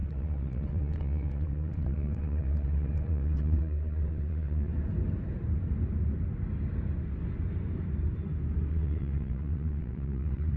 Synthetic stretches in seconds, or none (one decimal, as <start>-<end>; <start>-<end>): 0.0-4.7; 8.7-10.6